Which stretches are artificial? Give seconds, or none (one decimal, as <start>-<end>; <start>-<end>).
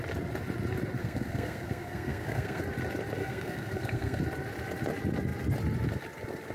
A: 1.0-2.6; 3.2-4.2